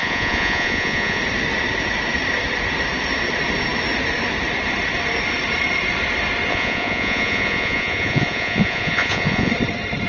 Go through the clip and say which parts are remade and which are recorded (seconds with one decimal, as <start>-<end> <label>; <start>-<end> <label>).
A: 0.0-1.2 remade; 1.2-6.5 recorded; 6.5-9.5 remade; 9.5-10.1 recorded